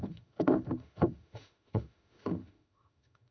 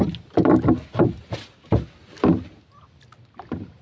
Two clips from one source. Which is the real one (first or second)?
second